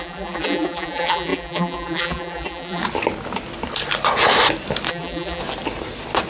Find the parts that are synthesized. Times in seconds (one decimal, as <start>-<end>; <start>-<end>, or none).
0.0-2.8; 4.9-5.4